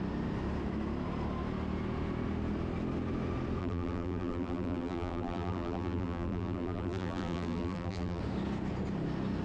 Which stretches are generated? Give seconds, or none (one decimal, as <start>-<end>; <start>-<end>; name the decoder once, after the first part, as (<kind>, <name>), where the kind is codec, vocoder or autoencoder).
3.6-8.2 (vocoder, BigVGAN v2)